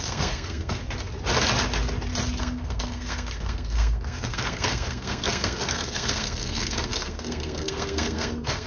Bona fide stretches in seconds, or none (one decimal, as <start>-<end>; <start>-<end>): 0.8-2.4